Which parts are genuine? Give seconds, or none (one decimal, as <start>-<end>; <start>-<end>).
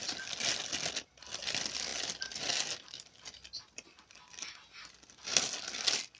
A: 0.0-6.2